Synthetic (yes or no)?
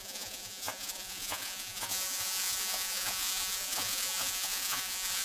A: yes